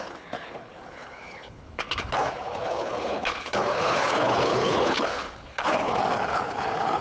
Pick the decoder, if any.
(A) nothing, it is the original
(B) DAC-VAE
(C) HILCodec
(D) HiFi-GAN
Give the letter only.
C